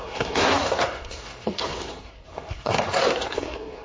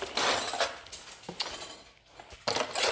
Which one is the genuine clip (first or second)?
second